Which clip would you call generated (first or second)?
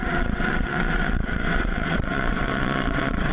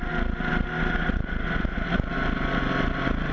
first